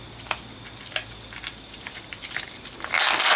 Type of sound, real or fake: real